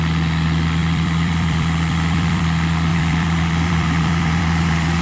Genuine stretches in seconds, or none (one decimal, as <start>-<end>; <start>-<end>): 0.0-0.8; 2.4-2.9